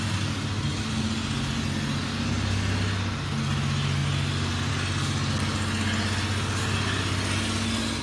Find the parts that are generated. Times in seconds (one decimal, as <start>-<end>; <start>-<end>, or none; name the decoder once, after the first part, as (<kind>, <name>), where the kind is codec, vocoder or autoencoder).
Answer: 4.0-4.7 (vocoder, BigVGAN v2)